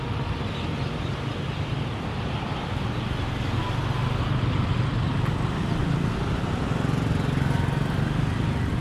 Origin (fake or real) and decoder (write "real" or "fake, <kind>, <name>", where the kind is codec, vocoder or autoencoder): real